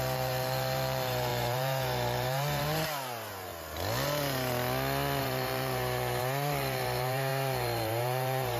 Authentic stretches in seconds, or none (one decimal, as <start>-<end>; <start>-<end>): 3.5-5.2